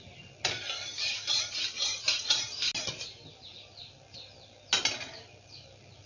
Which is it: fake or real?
real